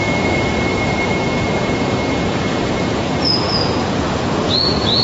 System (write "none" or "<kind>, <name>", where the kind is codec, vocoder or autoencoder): vocoder, Vocos